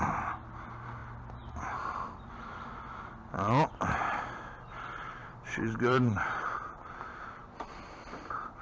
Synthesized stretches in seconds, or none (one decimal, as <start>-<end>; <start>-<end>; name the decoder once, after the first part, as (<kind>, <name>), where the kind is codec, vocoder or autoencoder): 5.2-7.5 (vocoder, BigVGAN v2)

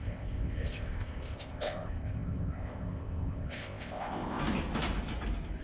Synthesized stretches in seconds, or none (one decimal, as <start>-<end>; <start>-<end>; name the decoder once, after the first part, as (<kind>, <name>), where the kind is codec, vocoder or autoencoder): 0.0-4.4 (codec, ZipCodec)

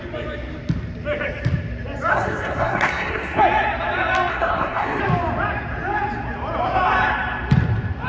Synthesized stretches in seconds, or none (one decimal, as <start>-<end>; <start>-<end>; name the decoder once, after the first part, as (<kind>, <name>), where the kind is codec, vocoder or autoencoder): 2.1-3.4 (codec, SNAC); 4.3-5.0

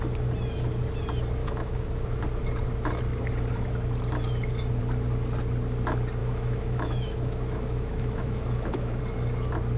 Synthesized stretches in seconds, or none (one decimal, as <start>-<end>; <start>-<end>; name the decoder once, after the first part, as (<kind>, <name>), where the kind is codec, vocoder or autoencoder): 1.4-2.2 (autoencoder, DAC-VAE); 6.2-9.0

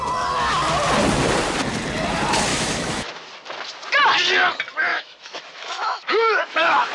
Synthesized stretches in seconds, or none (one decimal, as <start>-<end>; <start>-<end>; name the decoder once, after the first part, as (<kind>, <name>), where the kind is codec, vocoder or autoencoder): 2.5-3.1 (autoencoder, DAC-VAE); 4.9-6.9

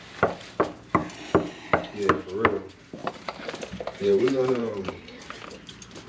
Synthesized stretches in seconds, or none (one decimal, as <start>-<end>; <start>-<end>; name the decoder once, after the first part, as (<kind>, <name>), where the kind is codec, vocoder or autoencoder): 3.0-3.5 (vocoder, BigVGAN v2); 4.0-5.2